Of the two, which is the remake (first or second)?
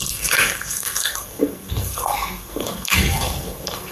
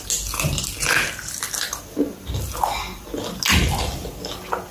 first